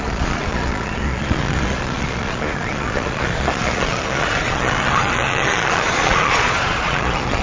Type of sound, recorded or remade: remade